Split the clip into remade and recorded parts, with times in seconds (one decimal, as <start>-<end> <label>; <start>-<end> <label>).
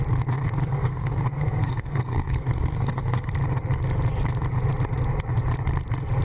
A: 0.0-0.6 recorded; 0.6-3.3 remade; 3.3-6.2 recorded